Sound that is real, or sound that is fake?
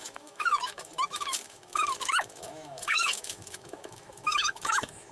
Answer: fake